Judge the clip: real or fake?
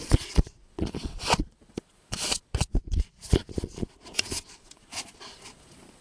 fake